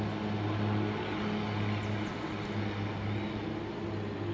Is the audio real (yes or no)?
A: yes